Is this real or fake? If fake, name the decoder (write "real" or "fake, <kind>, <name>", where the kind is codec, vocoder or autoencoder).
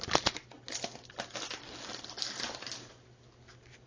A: real